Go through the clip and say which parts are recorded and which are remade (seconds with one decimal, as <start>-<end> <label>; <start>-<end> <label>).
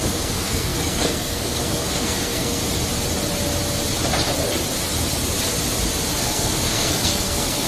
0.0-2.6 remade; 2.6-6.2 recorded; 6.2-7.7 remade